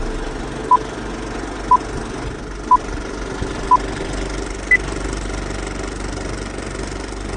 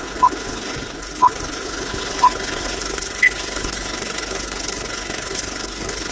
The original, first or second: first